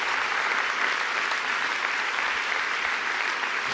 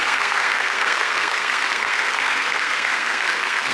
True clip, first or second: first